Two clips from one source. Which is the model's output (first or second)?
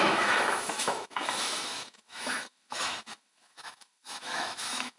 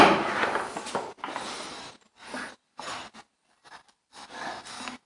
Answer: first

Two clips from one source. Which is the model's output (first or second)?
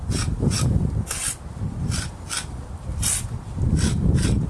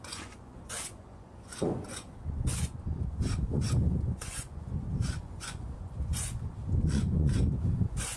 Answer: second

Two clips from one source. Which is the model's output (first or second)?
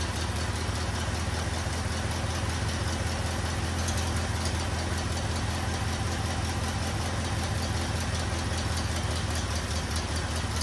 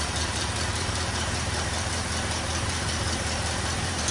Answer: second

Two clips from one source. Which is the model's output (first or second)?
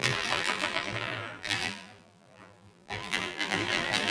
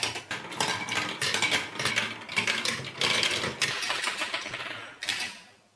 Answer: first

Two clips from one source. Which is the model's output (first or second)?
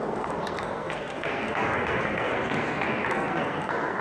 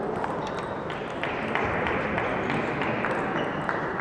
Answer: first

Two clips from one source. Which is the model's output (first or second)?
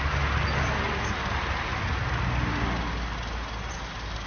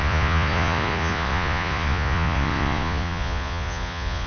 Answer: second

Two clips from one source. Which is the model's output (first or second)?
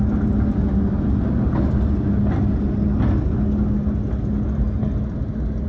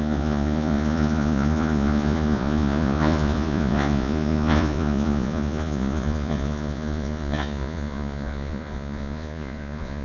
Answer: second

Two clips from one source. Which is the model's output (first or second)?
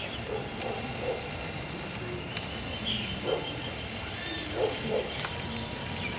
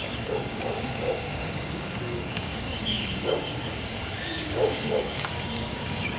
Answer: second